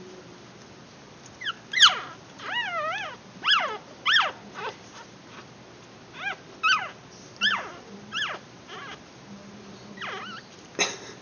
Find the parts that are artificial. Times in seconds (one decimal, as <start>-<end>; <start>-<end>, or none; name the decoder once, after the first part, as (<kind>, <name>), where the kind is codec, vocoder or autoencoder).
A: none